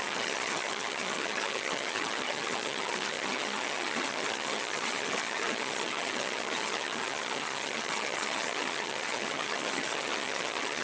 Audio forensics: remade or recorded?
remade